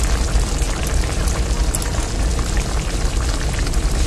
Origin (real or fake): real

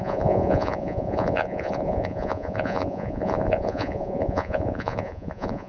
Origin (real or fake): fake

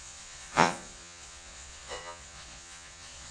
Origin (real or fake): fake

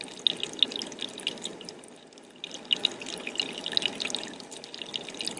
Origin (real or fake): real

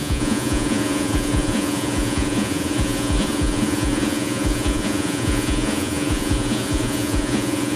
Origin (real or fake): fake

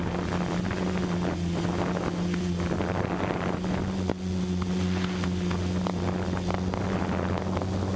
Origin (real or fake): real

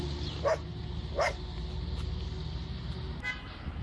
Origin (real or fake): real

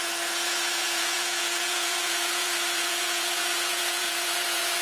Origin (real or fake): fake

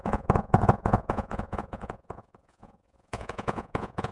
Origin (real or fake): fake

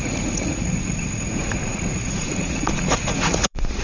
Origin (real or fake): fake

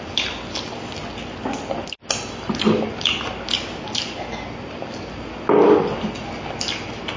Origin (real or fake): real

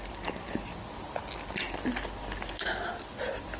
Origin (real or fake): real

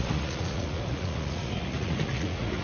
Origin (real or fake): fake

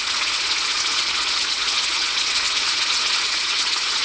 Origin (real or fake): fake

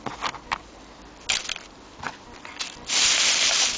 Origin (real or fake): real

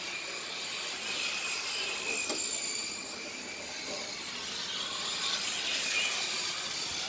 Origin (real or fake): real